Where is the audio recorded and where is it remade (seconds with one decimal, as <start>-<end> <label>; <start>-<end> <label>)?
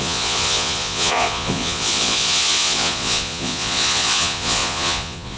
0.0-5.4 remade